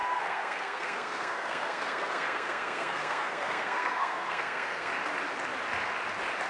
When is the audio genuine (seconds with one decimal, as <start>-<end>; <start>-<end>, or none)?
4.9-6.5